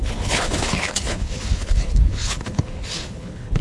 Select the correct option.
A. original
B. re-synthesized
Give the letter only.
B